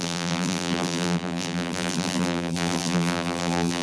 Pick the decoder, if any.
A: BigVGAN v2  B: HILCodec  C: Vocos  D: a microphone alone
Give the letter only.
A